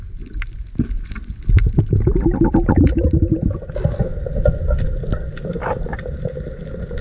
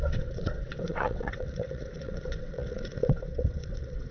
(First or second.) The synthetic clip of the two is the second